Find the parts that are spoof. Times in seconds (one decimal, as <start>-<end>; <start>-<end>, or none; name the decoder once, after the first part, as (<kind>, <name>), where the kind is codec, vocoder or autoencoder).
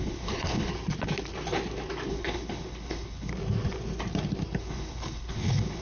0.0-0.7 (codec, HILCodec); 2.1-3.3; 4.6-5.8